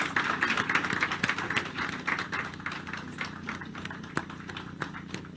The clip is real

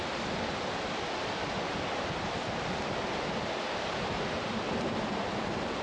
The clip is real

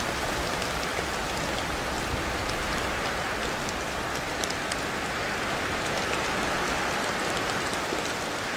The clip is real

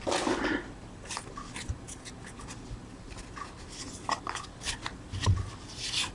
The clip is real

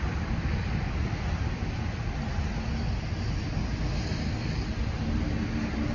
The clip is real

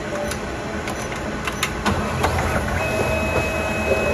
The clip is real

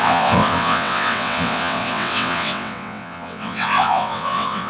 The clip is fake